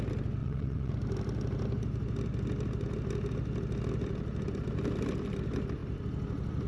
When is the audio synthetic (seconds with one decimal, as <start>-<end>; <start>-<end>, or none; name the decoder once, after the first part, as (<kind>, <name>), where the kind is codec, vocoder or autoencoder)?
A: 0.4-0.9 (vocoder, WaveNeXt)